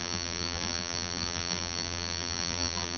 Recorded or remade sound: remade